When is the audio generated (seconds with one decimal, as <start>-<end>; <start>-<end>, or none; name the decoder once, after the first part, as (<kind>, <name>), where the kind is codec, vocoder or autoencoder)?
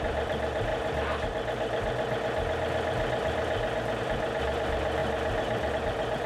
0.0-0.7 (vocoder, BigVGAN v2); 4.0-6.3